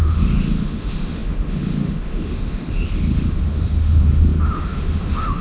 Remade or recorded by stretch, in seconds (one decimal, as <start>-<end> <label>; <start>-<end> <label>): 0.0-5.4 remade